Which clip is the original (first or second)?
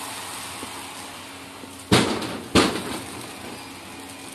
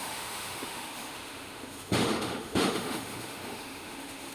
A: first